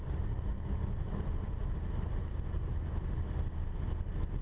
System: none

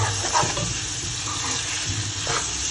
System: none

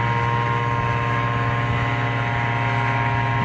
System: none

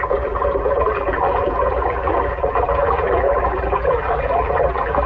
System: vocoder, BigVGAN v2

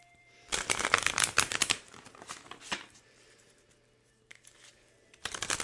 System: vocoder, BigVGAN v2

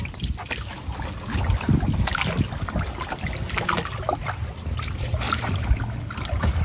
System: none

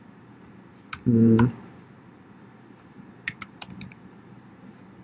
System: vocoder, BigVGAN v2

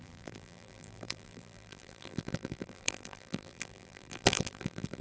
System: vocoder, BigVGAN v2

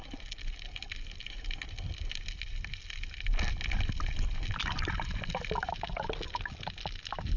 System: none